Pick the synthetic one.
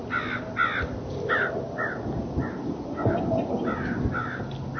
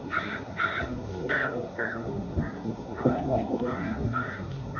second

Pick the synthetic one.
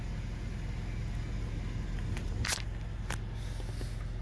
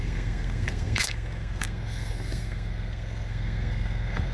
second